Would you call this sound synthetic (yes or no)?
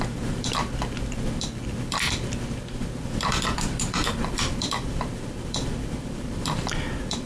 yes